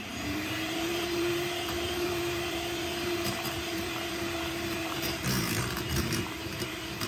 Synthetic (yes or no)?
yes